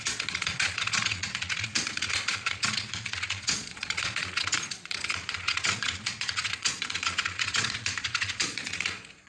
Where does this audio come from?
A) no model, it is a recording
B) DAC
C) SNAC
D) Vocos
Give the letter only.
D